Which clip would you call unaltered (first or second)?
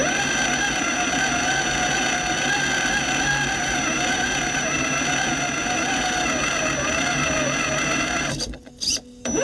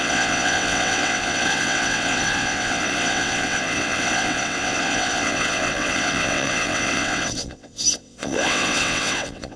first